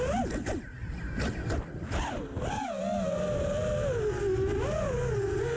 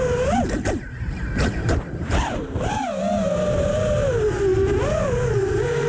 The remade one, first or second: second